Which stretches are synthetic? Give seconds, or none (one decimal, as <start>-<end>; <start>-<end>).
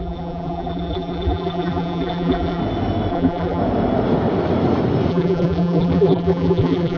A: 0.0-2.6; 3.1-3.6; 5.1-7.0